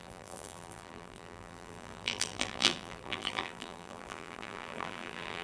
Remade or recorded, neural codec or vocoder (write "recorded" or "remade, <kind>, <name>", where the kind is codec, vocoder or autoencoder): remade, vocoder, BigVGAN v2